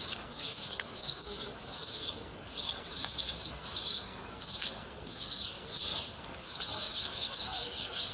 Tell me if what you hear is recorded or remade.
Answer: remade